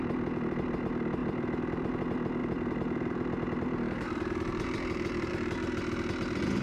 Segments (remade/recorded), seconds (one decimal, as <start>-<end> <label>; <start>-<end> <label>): 0.0-1.2 recorded; 1.2-2.0 remade; 2.0-2.4 recorded; 2.4-5.3 remade; 5.3-6.6 recorded